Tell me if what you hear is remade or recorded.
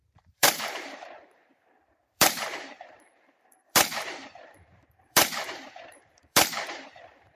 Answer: remade